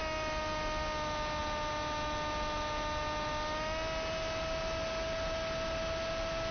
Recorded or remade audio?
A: recorded